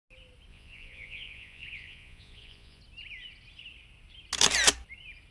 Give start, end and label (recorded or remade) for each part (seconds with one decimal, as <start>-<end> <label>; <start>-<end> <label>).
0.0-0.5 recorded; 0.5-2.8 remade; 2.8-5.3 recorded